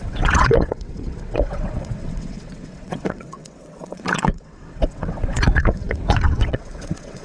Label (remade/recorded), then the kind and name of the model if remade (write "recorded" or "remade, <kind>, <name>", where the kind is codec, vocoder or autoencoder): remade, vocoder, WaveNeXt